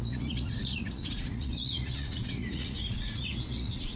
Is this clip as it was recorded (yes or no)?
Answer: no